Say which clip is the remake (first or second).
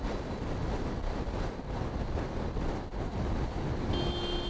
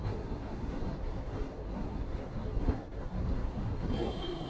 second